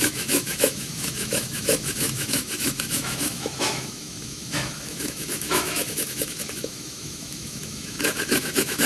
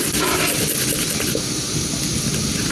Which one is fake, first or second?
first